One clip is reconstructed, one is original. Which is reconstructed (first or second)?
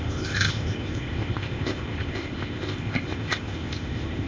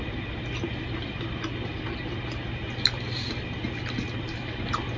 first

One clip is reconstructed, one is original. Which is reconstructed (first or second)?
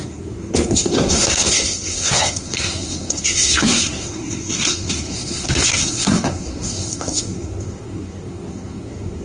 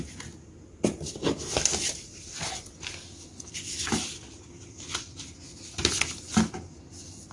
first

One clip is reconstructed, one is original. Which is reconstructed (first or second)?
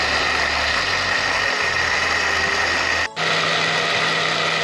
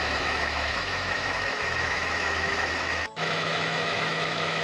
second